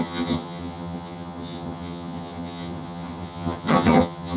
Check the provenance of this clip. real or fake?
fake